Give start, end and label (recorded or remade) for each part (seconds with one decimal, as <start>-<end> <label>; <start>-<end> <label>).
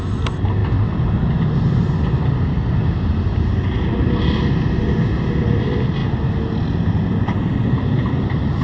0.0-8.6 recorded